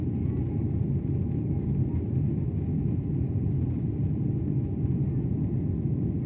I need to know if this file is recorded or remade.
recorded